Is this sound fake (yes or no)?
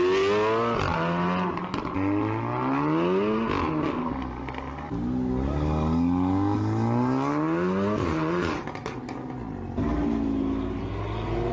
no